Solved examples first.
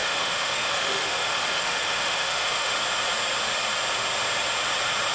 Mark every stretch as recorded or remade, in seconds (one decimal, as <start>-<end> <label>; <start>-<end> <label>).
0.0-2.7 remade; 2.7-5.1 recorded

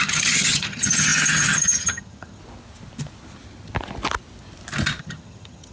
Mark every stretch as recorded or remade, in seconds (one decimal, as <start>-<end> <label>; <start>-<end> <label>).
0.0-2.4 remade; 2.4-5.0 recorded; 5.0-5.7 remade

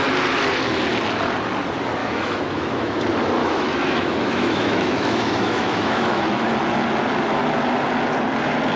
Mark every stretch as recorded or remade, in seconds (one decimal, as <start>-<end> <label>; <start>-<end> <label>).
0.0-2.0 recorded; 2.0-3.0 remade; 3.0-3.4 recorded; 3.4-6.5 remade; 6.5-8.8 recorded

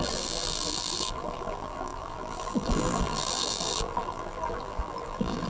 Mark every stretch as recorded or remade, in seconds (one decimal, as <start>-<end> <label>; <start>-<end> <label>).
0.0-5.5 remade